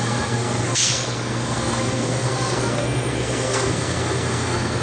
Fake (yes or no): yes